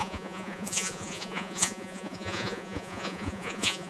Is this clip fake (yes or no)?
yes